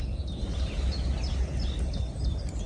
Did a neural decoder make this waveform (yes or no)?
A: no